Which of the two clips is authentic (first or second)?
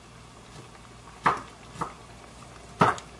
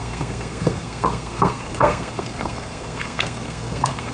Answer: first